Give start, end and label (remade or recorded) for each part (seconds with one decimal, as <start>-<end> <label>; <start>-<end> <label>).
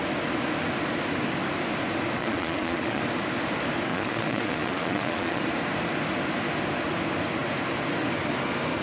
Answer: 0.0-2.2 recorded; 2.2-3.0 remade; 3.0-3.9 recorded; 3.9-5.4 remade; 5.4-8.8 recorded